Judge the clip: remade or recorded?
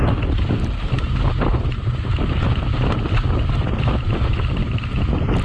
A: recorded